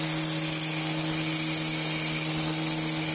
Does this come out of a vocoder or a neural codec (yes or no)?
no